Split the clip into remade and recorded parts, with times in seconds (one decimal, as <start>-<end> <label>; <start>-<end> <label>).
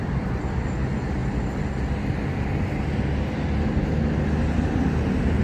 0.0-5.4 recorded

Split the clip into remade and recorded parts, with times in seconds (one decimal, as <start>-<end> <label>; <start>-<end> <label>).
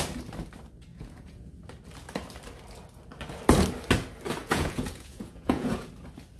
0.0-0.9 recorded; 0.9-1.6 remade; 1.6-4.4 recorded; 4.4-5.9 remade; 5.9-6.4 recorded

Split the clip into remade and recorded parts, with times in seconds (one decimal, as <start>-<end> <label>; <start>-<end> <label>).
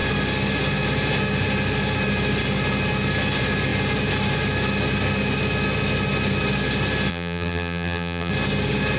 0.0-7.1 recorded; 7.1-8.3 remade; 8.3-9.0 recorded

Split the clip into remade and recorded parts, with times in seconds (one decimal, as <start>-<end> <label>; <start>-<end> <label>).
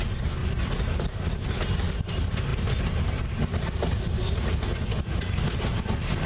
0.0-0.4 recorded; 0.4-1.3 remade; 1.3-6.3 recorded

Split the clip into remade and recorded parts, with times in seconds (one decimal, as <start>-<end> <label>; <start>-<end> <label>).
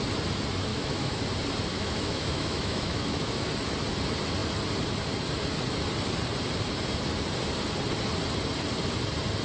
0.0-0.7 recorded; 0.7-1.2 remade; 1.2-1.7 recorded; 1.7-3.5 remade; 3.5-9.4 recorded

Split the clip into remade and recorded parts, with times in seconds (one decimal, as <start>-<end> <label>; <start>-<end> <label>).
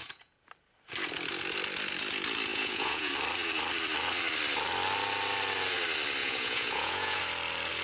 0.0-0.5 remade; 0.5-2.5 recorded; 2.5-3.1 remade; 3.1-6.2 recorded; 6.2-7.2 remade; 7.2-7.8 recorded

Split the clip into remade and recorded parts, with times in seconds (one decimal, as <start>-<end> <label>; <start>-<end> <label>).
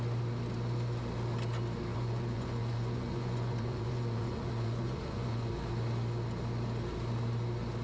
0.0-1.9 recorded; 1.9-5.5 remade; 5.5-7.8 recorded